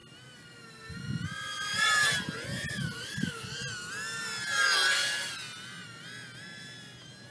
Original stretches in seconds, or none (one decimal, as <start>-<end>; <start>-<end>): 0.0-7.3

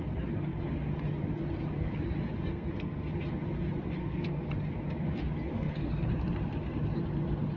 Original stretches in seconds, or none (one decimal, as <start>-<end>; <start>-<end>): 0.0-2.5; 3.1-4.0; 4.5-5.5; 6.1-7.6

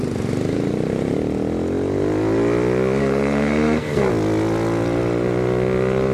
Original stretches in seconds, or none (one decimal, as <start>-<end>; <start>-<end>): 0.0-3.0; 4.1-6.1

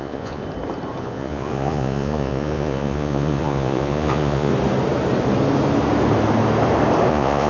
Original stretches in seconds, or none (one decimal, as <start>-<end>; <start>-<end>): 0.4-1.0; 4.5-7.1

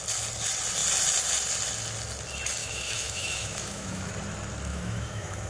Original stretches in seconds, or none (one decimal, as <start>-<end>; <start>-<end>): 0.0-2.6; 4.1-4.7

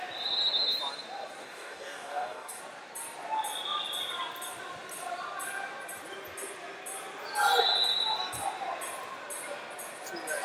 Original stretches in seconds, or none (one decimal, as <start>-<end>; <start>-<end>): 0.0-1.4; 2.6-10.4

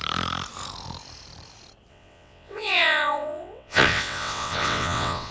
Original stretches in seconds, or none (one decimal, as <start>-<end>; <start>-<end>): 0.0-1.9